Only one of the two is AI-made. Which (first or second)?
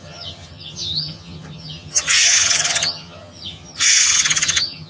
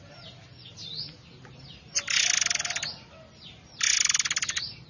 first